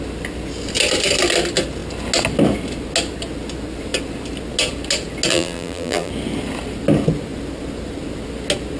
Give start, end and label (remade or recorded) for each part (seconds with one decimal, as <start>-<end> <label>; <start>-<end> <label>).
0.0-5.3 recorded; 5.3-6.1 remade; 6.1-8.8 recorded